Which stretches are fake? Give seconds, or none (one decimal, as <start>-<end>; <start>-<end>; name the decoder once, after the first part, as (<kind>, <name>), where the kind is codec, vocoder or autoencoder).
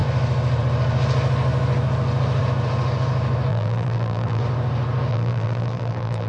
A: 3.5-4.4 (vocoder, BigVGAN v2); 5.1-6.3